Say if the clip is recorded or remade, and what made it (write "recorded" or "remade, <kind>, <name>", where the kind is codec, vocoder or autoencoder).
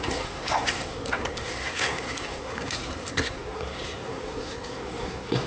remade, codec, SNAC